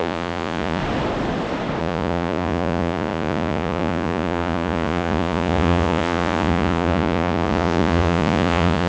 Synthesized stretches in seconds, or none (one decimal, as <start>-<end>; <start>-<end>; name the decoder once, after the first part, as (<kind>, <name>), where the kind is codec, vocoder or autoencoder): 0.0-0.8 (vocoder, Vocos); 1.8-8.9